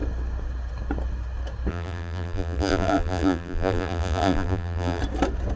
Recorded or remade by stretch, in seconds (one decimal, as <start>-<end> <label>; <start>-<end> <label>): 0.0-1.7 recorded; 1.7-5.0 remade; 5.0-5.6 recorded